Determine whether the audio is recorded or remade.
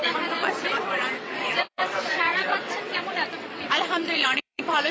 remade